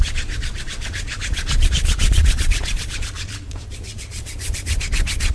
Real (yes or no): no